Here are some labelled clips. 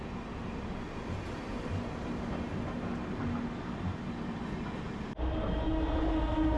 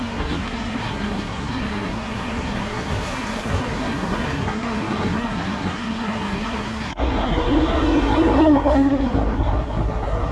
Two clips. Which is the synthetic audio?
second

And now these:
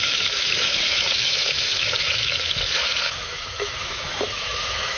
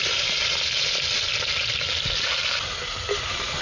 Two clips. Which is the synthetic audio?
first